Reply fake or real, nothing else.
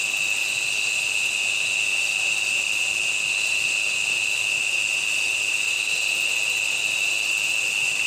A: real